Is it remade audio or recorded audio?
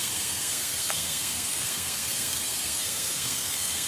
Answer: remade